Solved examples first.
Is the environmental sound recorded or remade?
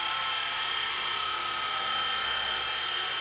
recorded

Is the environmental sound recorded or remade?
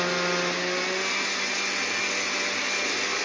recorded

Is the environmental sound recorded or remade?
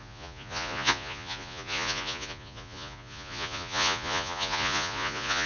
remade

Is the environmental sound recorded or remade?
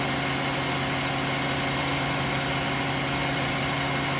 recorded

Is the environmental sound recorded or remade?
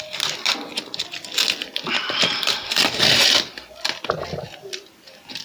recorded